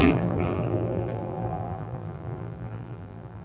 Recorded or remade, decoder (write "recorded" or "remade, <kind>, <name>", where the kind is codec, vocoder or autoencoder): remade, vocoder, BigVGAN v2